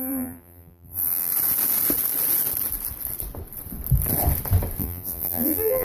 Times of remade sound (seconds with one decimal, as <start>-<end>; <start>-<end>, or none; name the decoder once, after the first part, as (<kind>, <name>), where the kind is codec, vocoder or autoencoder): 0.0-1.3 (vocoder, BigVGAN v2); 4.8-5.8